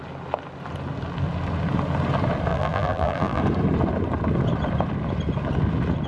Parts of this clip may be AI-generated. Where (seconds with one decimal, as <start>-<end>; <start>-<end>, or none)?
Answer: 2.5-3.4